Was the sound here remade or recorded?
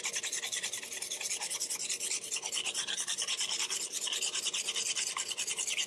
recorded